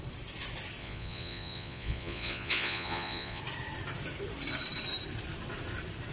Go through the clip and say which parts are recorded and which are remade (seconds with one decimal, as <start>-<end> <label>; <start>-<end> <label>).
0.0-0.8 recorded; 0.8-3.4 remade; 3.4-6.1 recorded